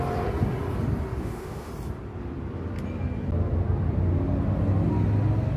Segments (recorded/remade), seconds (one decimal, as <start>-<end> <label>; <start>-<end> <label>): 0.0-1.2 recorded; 1.2-1.7 remade; 1.7-5.6 recorded

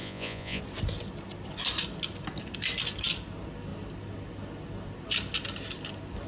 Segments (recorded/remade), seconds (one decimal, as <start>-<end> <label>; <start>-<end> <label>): 0.0-0.6 remade; 0.6-6.3 recorded

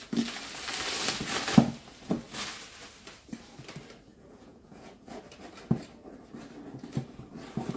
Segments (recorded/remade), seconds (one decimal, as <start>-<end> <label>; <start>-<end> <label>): 0.0-4.1 recorded; 4.1-5.2 remade; 5.2-7.8 recorded